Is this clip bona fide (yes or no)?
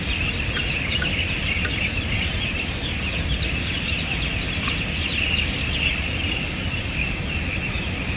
yes